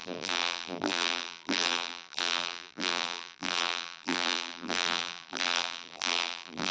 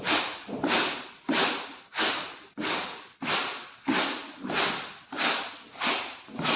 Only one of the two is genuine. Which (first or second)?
second